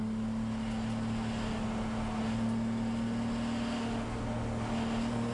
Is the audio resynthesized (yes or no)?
no